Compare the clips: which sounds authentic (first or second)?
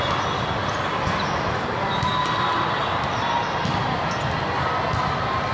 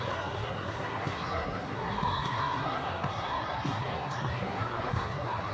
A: first